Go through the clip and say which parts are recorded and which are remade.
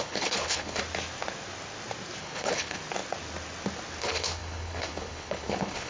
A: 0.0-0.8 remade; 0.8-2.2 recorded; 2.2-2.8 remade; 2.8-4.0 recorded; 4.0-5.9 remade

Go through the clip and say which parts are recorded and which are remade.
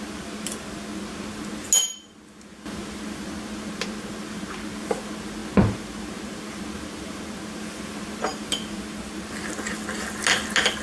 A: 0.0-10.8 recorded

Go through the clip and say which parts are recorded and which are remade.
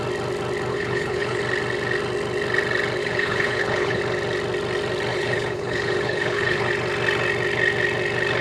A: 0.0-0.7 recorded; 0.7-1.4 remade; 1.4-3.0 recorded; 3.0-4.0 remade; 4.0-5.1 recorded; 5.1-6.7 remade; 6.7-8.4 recorded